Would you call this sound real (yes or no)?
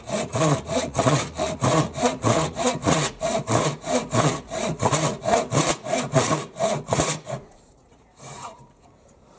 no